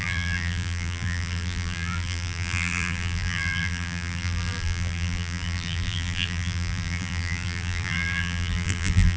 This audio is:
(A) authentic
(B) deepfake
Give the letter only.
B